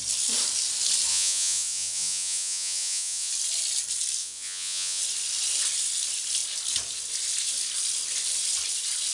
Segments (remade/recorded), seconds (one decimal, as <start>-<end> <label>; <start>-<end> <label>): 0.0-1.1 recorded; 1.1-3.3 remade; 3.3-4.2 recorded; 4.2-5.0 remade; 5.0-9.1 recorded